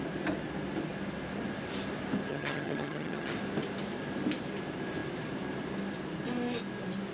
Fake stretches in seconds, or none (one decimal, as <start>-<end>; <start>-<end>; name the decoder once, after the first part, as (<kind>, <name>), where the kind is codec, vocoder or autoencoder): 2.3-3.3 (vocoder, HiFi-GAN)